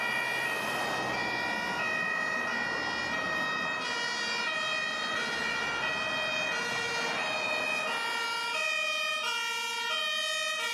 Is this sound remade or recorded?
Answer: recorded